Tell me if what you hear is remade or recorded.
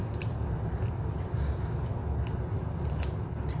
recorded